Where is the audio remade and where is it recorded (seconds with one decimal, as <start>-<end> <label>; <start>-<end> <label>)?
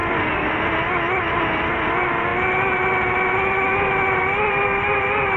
0.0-5.4 recorded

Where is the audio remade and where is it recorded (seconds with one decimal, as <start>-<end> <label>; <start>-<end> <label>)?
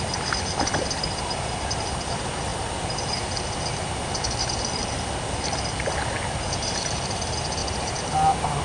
0.0-8.6 recorded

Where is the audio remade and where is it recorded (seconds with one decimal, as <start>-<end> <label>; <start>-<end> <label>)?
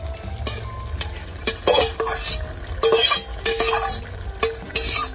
0.0-5.1 recorded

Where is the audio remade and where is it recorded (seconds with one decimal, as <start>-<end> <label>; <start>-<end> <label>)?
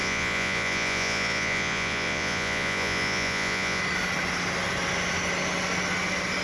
0.0-3.8 remade; 3.8-6.4 recorded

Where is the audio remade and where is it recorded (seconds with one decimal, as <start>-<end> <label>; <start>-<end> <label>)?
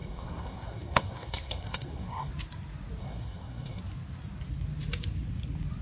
0.0-2.3 remade; 2.3-3.0 recorded; 3.0-3.8 remade; 3.8-5.8 recorded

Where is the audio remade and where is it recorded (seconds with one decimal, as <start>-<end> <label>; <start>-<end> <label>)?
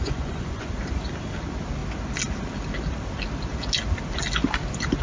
0.0-0.7 remade; 0.7-5.0 recorded